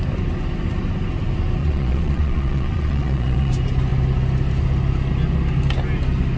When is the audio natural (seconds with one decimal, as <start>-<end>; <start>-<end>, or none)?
0.0-1.6; 3.5-6.4